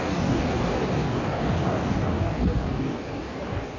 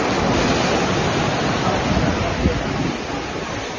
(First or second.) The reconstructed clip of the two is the first